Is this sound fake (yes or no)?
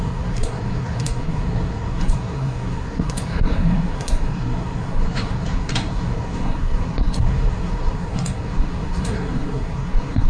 yes